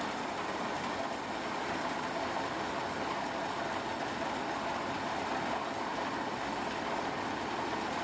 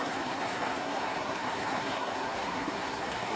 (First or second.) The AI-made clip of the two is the second